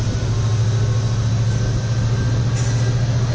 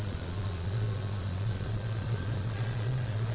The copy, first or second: second